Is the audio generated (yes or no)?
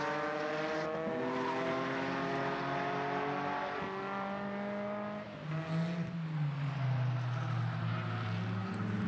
no